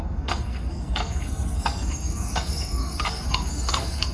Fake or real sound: fake